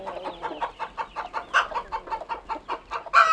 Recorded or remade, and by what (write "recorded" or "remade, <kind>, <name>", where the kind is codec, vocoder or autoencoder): recorded